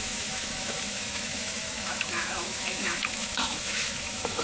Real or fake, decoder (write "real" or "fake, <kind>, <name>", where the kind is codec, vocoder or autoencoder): fake, autoencoder, DAC-VAE